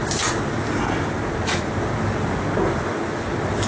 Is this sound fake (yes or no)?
no